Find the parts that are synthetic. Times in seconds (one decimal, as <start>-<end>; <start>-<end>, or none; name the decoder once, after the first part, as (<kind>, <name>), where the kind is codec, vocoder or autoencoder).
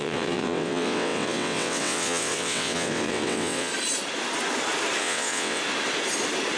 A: 0.0-3.7 (vocoder, WaveNeXt); 5.0-5.6